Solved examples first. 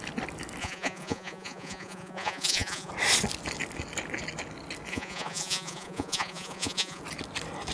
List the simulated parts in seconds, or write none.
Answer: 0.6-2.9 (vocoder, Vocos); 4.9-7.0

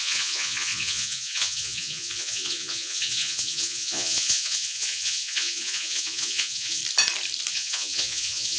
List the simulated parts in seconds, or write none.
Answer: 0.0-6.8 (vocoder, Vocos); 7.5-8.6

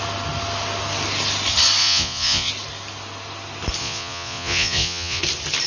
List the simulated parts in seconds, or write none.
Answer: 1.8-2.5 (vocoder, Vocos); 3.8-5.2